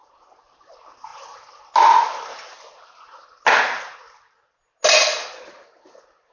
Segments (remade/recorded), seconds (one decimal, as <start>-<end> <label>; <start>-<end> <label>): 0.0-6.3 recorded

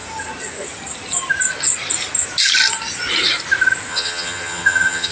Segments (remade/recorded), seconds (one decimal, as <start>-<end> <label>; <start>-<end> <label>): 0.0-3.9 recorded; 3.9-5.1 remade

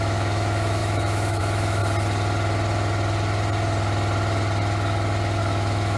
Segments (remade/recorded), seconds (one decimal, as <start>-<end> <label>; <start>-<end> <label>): 0.0-1.8 remade; 1.8-5.4 recorded; 5.4-6.0 remade

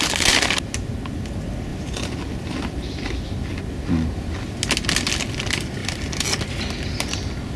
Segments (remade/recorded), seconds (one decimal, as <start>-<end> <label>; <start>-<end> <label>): 0.0-1.7 recorded; 1.7-3.6 remade; 3.6-5.8 recorded; 5.8-6.4 remade; 6.4-7.6 recorded

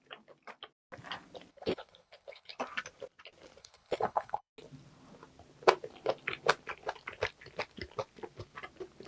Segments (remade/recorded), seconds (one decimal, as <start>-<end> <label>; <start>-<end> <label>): 0.0-1.5 recorded; 1.5-2.6 remade; 2.6-3.6 recorded; 3.6-4.5 remade; 4.5-9.1 recorded

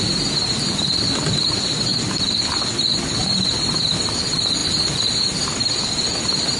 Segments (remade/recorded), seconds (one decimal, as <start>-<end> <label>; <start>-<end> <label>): 0.0-6.6 recorded